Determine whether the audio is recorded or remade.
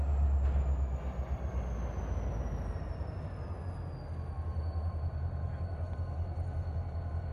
recorded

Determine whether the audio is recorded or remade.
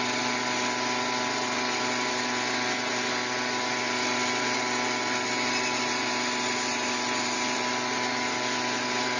recorded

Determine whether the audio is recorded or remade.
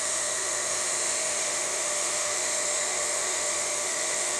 remade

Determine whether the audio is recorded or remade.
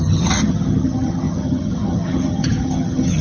remade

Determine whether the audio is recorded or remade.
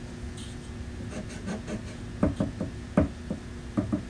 recorded